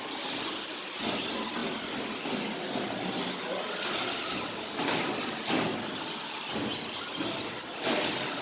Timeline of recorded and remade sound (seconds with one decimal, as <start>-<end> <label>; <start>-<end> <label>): 0.0-8.4 recorded

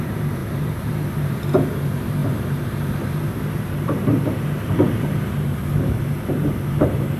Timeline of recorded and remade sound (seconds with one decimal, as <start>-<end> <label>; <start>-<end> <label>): 0.0-7.2 remade

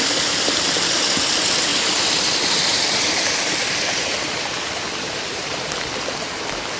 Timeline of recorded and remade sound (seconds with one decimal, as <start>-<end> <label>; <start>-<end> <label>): 0.0-1.7 recorded; 1.7-5.8 remade; 5.8-6.8 recorded